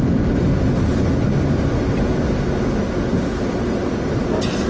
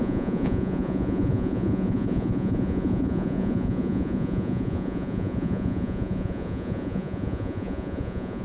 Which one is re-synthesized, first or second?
second